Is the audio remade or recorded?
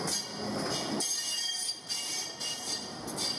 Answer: recorded